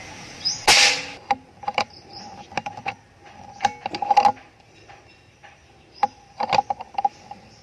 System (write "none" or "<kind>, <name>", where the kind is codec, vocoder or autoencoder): none